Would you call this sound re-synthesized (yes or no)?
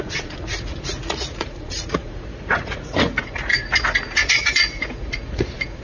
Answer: yes